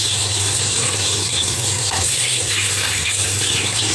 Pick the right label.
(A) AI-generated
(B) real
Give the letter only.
A